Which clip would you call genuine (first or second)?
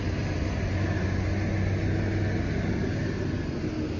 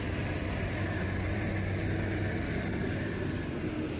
first